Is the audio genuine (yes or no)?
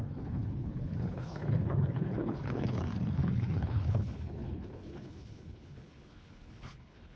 no